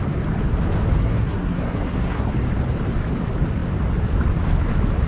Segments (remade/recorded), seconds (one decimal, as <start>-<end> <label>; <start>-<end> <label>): 0.0-1.0 recorded; 1.0-2.3 remade; 2.3-5.1 recorded